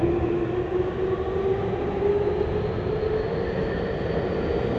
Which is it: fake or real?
real